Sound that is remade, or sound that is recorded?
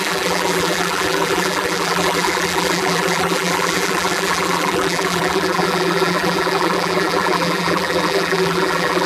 remade